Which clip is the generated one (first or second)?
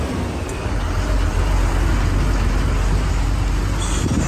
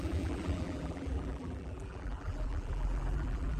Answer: second